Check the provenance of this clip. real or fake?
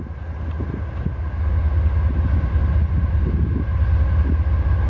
real